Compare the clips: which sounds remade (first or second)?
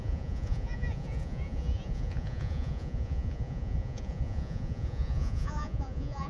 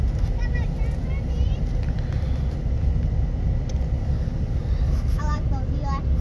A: first